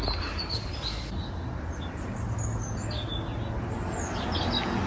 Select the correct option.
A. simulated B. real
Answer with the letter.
B